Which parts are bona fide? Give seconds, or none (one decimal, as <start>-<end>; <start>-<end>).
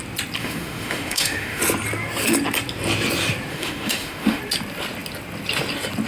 0.0-0.4; 1.6-3.5; 4.4-6.1